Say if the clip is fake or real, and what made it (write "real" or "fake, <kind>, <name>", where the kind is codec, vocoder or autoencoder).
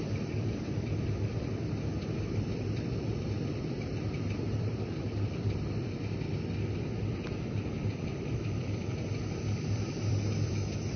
fake, vocoder, BigVGAN v2